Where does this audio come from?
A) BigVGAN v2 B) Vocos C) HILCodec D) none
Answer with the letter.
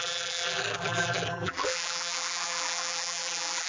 A